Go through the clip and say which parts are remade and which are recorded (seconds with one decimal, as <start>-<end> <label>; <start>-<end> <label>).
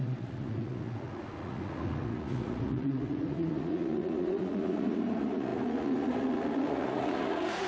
0.0-7.7 remade